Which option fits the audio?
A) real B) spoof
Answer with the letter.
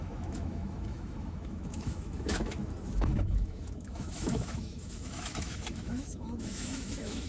B